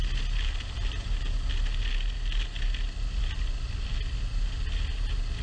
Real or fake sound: real